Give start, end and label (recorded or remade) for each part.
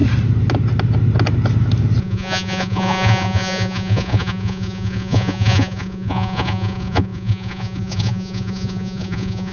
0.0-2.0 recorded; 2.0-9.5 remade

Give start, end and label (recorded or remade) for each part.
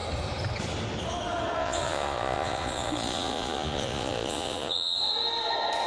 0.0-1.6 recorded; 1.6-5.1 remade; 5.1-5.9 recorded